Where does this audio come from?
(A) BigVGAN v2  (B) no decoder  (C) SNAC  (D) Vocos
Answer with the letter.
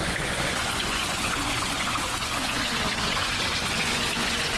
D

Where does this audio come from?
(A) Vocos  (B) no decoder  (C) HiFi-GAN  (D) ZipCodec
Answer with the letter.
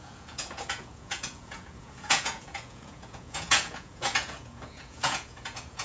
A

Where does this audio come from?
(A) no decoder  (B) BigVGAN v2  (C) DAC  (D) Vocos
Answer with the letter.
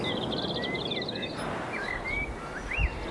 A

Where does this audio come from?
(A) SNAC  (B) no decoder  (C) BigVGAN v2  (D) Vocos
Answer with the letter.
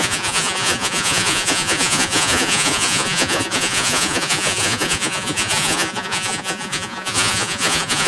D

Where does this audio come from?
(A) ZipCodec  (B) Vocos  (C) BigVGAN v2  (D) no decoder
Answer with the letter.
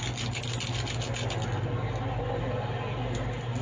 D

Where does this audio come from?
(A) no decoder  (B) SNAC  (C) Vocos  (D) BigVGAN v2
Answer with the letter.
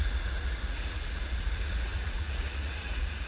C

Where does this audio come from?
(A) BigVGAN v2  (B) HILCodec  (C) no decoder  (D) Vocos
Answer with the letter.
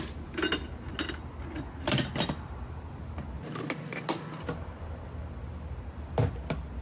C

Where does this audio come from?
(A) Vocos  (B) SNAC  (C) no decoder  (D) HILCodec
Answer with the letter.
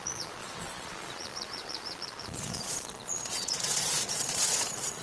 A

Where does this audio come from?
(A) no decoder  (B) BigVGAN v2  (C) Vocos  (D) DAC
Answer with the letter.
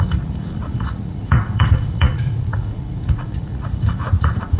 C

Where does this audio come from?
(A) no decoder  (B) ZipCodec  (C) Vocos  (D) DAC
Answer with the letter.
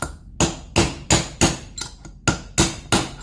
A